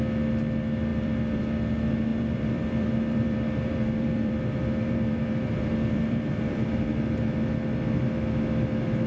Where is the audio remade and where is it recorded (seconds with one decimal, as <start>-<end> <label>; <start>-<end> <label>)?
0.0-0.9 recorded; 0.9-1.4 remade; 1.4-2.1 recorded; 2.1-7.2 remade; 7.2-9.1 recorded